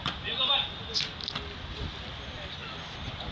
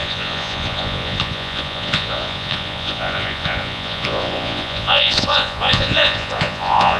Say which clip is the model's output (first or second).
second